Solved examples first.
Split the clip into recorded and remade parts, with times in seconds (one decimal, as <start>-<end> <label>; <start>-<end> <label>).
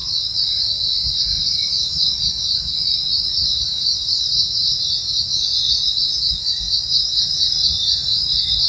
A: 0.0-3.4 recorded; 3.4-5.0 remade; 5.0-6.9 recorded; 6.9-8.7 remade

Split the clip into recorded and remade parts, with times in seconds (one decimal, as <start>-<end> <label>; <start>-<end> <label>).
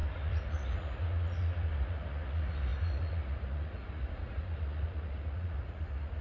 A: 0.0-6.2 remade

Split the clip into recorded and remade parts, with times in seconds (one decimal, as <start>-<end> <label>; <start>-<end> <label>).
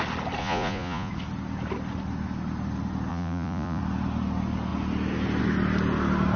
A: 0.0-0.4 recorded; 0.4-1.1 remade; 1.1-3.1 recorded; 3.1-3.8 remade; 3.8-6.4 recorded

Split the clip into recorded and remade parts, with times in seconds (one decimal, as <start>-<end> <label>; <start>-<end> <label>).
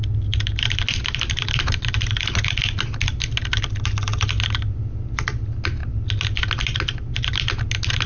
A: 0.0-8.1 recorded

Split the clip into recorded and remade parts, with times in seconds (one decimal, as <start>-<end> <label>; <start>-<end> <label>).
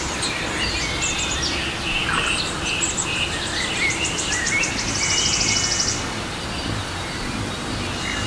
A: 0.0-8.3 recorded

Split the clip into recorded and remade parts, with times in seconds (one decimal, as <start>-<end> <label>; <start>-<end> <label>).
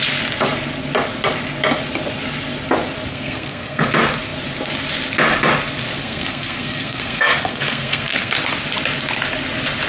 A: 0.0-3.1 recorded; 3.1-3.8 remade; 3.8-6.0 recorded; 6.0-8.3 remade; 8.3-9.9 recorded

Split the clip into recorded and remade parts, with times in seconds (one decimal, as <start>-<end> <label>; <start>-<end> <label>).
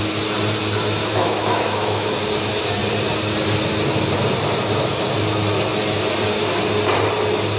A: 0.0-1.0 recorded; 1.0-2.2 remade; 2.2-7.6 recorded